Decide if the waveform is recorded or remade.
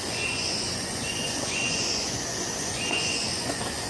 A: remade